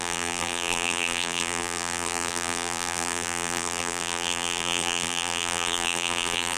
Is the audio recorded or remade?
remade